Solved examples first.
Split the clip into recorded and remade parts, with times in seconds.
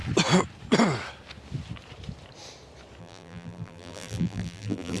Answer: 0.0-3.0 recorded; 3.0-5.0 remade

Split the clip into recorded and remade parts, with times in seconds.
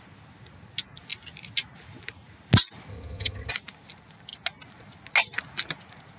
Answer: 0.0-2.9 recorded; 2.9-3.5 remade; 3.5-6.2 recorded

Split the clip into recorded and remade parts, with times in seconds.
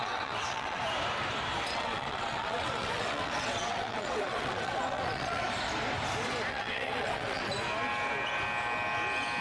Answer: 0.0-0.8 remade; 0.8-1.7 recorded; 1.7-5.4 remade; 5.4-6.5 recorded; 6.5-7.5 remade; 7.5-9.4 recorded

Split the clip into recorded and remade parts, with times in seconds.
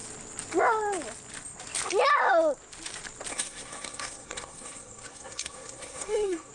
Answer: 0.0-3.3 recorded; 3.3-6.5 remade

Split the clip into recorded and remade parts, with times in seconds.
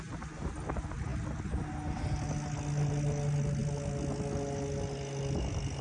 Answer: 0.0-5.8 recorded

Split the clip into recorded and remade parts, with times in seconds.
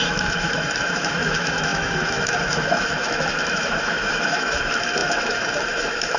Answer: 0.0-6.2 remade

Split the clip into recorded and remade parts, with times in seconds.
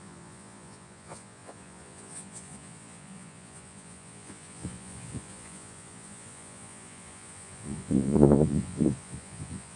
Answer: 0.0-9.8 remade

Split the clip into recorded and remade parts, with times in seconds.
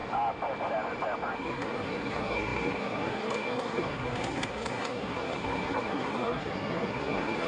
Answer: 0.0-1.3 recorded; 1.3-7.5 remade